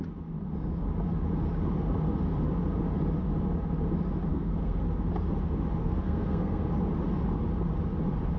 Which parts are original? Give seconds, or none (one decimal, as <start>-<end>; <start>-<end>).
0.0-4.3; 4.8-5.8; 6.7-8.4